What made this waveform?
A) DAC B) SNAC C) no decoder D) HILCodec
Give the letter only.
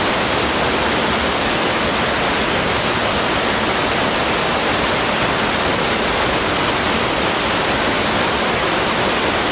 C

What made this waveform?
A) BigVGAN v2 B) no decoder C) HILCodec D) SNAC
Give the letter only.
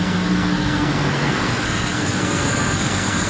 D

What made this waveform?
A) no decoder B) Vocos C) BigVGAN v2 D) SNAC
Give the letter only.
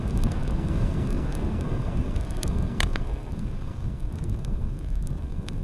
D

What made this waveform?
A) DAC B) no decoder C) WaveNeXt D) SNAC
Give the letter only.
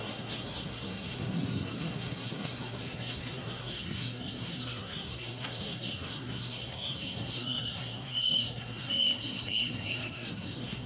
D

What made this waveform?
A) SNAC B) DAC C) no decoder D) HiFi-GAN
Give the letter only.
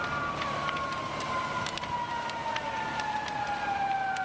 C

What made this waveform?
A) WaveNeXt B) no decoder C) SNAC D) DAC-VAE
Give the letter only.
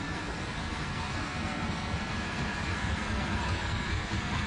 C